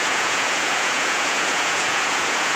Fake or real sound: fake